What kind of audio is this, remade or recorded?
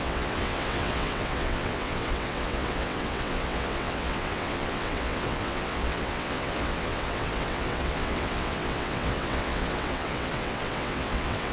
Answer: remade